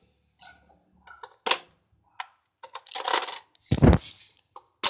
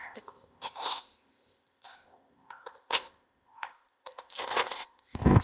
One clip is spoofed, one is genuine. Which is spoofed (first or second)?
second